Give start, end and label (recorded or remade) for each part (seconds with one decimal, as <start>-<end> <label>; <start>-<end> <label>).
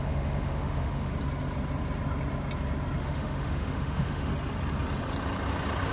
0.0-1.1 remade; 1.1-3.0 recorded; 3.0-4.3 remade; 4.3-5.9 recorded